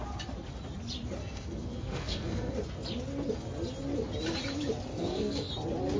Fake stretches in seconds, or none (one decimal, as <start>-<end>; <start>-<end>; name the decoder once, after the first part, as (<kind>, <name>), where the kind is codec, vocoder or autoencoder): 1.2-2.5 (codec, SNAC); 4.9-5.5